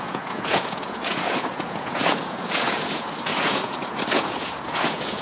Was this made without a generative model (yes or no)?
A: no